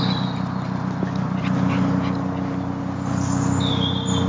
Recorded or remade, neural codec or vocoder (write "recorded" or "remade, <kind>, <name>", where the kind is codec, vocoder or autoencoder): recorded